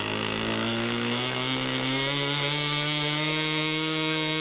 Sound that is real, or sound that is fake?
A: fake